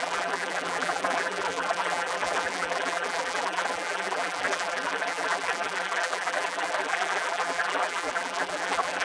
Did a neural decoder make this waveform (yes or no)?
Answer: yes